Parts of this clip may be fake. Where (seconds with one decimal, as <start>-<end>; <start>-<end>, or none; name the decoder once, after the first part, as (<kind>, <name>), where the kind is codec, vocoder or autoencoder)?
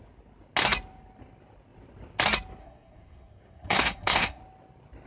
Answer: 2.6-4.4 (codec, SNAC)